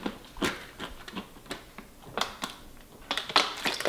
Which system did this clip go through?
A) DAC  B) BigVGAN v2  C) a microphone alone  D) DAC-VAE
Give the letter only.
C